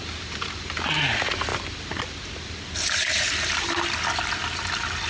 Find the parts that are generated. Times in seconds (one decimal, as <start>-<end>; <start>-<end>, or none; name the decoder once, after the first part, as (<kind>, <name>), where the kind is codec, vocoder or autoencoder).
none